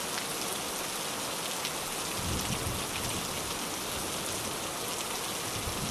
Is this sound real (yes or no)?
yes